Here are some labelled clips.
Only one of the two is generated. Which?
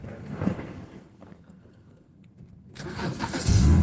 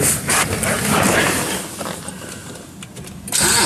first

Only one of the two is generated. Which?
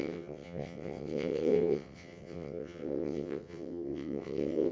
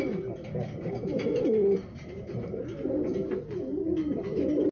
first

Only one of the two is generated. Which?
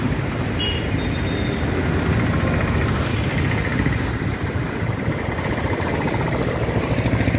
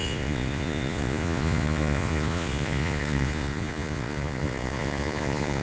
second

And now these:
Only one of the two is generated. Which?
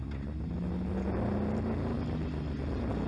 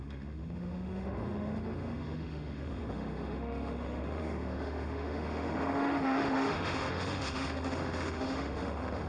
second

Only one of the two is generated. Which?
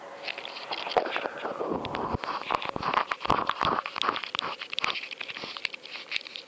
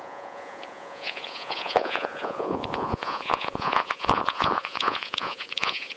second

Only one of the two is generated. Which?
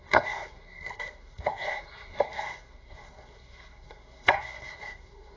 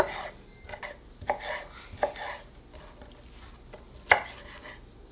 first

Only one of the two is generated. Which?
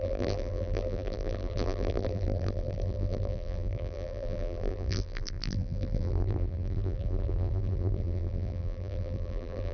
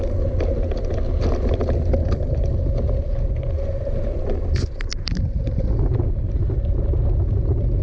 first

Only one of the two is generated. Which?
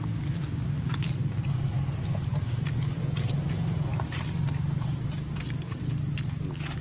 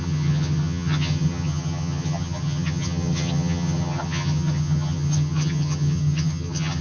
second